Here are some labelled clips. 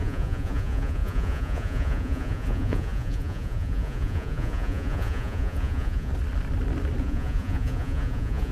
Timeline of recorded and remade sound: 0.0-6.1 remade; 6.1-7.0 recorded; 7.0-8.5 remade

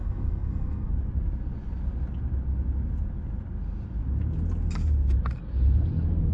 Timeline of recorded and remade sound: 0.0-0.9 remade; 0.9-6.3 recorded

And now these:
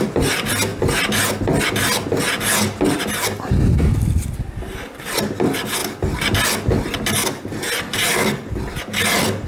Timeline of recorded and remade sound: 0.0-9.5 recorded

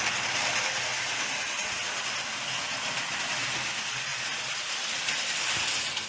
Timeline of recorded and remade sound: 0.0-4.1 recorded; 4.1-5.6 remade; 5.6-6.1 recorded

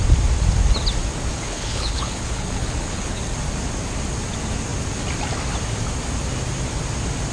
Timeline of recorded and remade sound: 0.0-1.3 recorded; 1.3-3.2 remade; 3.2-7.3 recorded

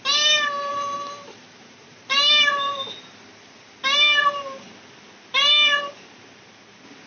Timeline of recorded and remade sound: 0.0-0.7 recorded; 0.7-2.7 remade; 2.7-7.1 recorded